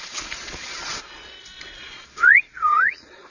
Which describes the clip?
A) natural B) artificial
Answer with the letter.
B